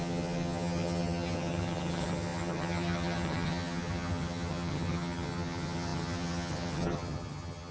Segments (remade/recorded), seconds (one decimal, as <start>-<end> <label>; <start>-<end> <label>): 0.0-7.7 remade